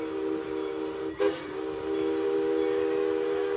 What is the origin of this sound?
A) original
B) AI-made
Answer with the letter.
A